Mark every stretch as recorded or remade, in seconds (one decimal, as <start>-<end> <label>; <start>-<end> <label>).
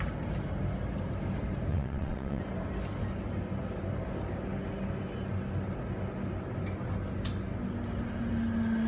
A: 0.0-1.7 recorded; 1.7-2.4 remade; 2.4-8.9 recorded